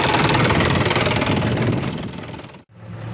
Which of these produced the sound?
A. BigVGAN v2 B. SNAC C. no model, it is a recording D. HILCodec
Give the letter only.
C